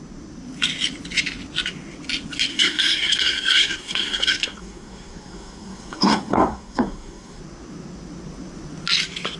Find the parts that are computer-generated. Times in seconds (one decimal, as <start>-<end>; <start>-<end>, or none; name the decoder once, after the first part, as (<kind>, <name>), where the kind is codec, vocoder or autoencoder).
2.5-7.4 (codec, SNAC)